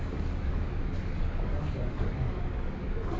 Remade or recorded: remade